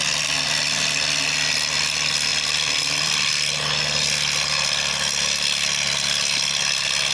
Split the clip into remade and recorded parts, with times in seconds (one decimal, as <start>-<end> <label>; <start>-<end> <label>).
0.0-7.1 recorded